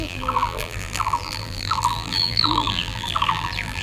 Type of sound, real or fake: fake